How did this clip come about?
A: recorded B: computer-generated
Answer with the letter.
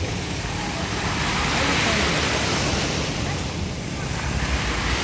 A